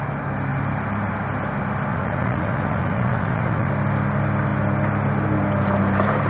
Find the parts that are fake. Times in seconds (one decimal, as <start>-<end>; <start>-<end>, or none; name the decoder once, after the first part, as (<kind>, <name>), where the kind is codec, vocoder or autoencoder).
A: 1.9-3.7 (vocoder, Vocos)